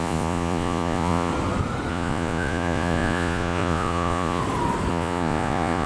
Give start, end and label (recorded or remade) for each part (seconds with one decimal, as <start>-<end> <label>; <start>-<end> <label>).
0.0-1.3 remade; 1.3-1.9 recorded; 1.9-4.4 remade; 4.4-4.9 recorded; 4.9-5.9 remade